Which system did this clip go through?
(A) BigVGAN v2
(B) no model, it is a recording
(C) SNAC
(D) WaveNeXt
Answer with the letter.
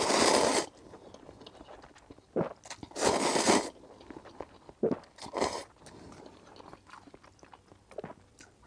B